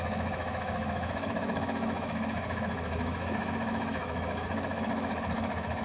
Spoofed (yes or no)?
yes